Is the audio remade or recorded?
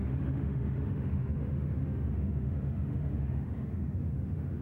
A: remade